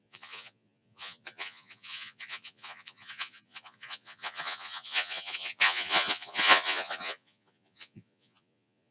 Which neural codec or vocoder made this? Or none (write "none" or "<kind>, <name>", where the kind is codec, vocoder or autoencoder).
vocoder, Vocos